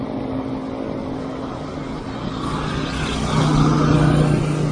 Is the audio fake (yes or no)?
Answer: no